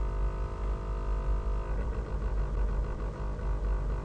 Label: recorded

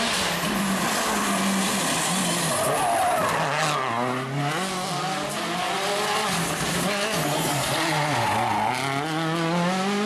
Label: recorded